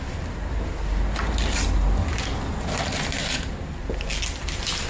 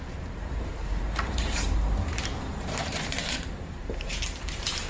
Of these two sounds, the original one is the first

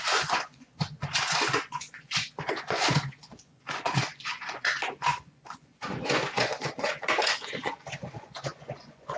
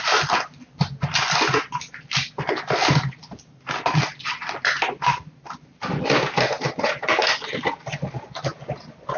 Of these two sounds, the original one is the second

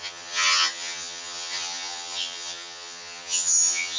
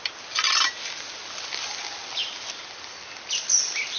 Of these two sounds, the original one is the second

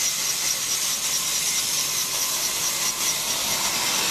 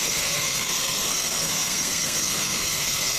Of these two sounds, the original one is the first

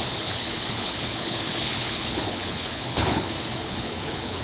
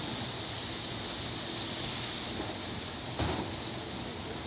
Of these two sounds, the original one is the second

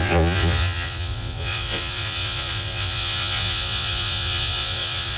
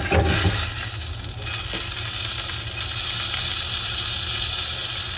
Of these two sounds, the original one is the second